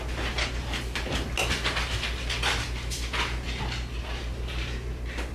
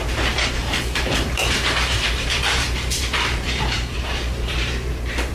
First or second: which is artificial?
second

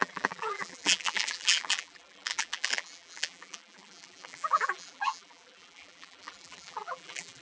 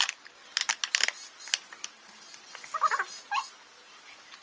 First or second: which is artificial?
first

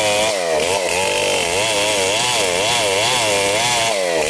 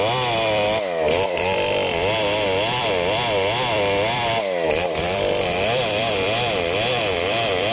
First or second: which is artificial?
second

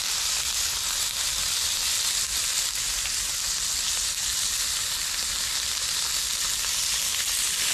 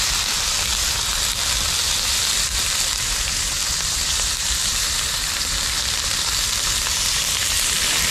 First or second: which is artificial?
second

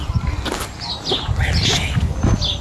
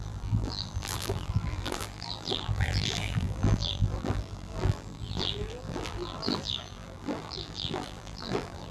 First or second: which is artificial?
second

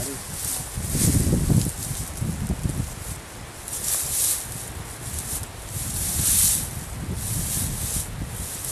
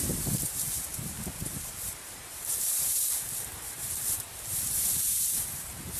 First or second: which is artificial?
second